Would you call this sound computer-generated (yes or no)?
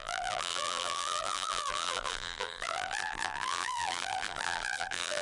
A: yes